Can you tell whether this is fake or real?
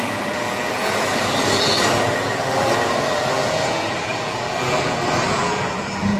fake